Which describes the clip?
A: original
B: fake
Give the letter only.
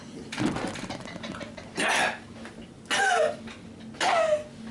A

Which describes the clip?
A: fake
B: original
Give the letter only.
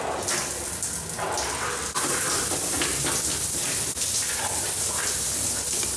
B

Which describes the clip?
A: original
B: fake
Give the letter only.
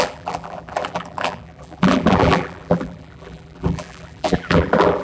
B